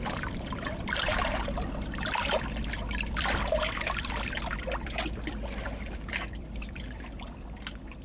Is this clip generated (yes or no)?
yes